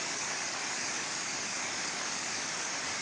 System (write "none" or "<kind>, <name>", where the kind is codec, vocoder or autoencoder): codec, DAC